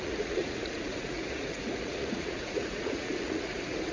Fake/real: fake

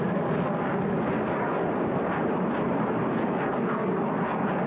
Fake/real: real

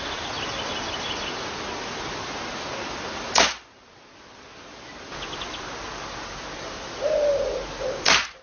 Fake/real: real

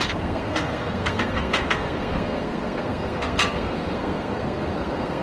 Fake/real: fake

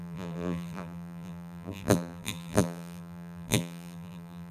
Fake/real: fake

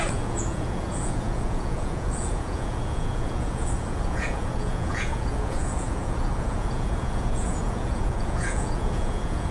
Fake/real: fake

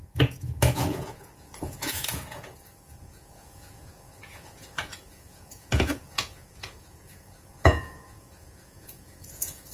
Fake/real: fake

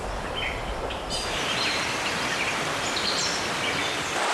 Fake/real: real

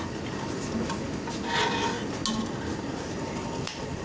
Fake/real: real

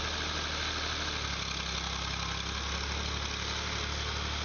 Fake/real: real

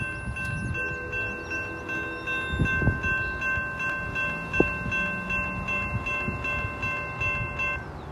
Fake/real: real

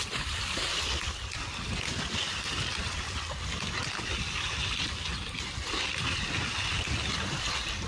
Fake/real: real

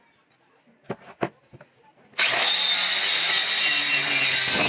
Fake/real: real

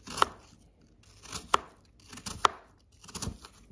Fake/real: real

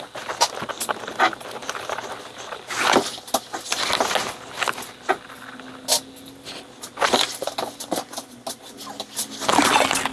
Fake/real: real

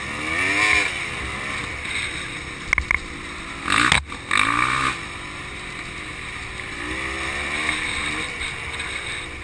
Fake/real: real